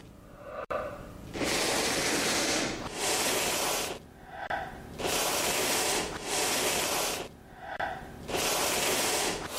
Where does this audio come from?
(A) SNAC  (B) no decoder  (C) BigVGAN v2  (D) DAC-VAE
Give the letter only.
C